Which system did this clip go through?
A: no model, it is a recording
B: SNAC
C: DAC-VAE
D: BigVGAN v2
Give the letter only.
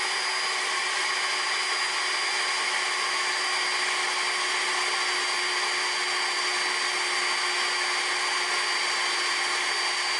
A